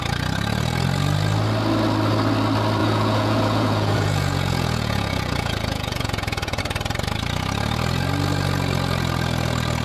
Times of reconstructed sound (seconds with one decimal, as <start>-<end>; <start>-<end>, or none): 2.8-6.6